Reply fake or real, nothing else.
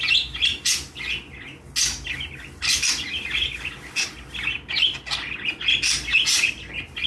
real